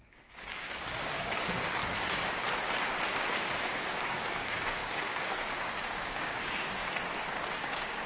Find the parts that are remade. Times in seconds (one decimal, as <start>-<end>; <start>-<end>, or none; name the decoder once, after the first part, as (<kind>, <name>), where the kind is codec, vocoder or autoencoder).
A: 0.0-1.8 (codec, DAC); 3.4-6.8; 7.6-8.1